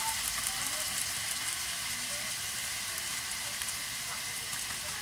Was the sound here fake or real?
real